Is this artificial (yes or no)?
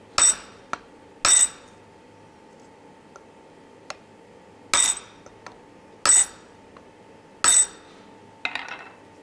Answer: no